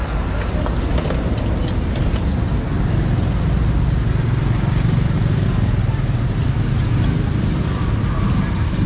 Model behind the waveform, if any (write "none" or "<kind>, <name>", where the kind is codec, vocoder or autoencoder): none